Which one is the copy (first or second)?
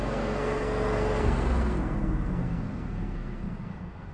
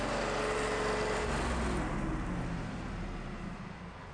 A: first